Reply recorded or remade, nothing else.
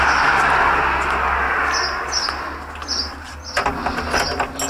recorded